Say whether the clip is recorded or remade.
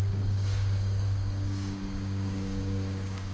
remade